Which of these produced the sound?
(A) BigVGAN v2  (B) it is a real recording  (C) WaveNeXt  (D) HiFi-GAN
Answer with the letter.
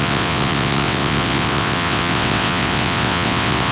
C